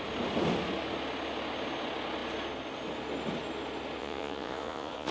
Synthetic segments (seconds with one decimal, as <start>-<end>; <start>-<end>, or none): 4.0-5.1